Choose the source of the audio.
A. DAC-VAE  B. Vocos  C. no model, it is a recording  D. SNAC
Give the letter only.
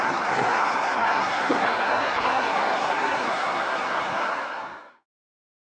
D